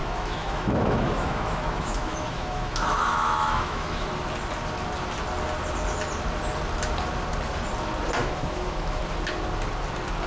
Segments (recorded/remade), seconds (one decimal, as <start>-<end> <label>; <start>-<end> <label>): 0.0-4.1 remade; 4.1-8.2 recorded; 8.2-9.0 remade; 9.0-10.3 recorded